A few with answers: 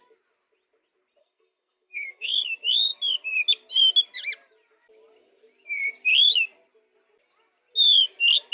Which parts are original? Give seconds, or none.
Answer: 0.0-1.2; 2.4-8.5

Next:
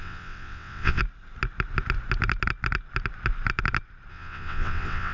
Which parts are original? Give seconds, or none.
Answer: 1.0-4.1

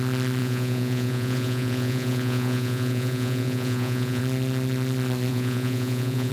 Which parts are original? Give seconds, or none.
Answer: 0.0-0.4; 4.2-5.3

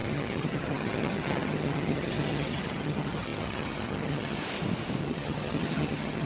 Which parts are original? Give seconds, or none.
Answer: 4.4-5.0

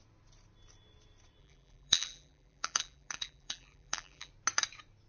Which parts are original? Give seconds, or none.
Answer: 0.0-1.4; 4.3-5.1

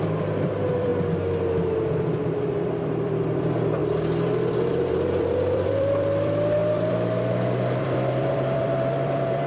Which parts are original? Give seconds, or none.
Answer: 0.9-2.5; 3.8-4.5

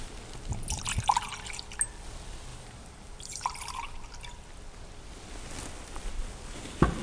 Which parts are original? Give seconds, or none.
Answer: 0.0-2.5; 3.7-7.0